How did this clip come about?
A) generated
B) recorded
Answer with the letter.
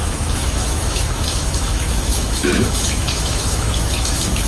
A